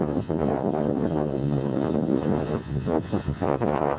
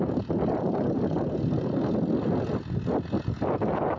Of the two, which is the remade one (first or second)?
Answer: first